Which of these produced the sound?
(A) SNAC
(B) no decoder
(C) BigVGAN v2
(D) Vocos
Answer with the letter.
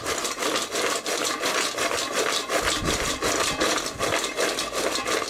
B